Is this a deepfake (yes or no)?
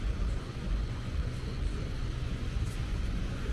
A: yes